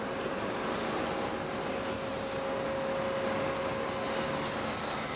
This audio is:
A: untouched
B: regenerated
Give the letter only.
A